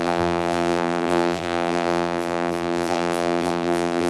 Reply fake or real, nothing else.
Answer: fake